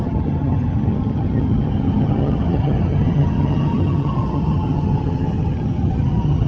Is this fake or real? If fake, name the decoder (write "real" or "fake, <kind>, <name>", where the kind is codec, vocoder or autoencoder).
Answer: fake, vocoder, HiFi-GAN